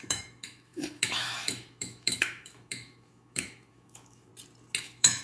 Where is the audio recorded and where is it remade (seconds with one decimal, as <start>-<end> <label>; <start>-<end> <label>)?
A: 0.0-4.3 remade; 4.3-4.8 recorded; 4.8-5.2 remade